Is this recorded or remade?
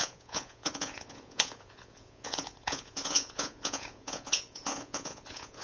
remade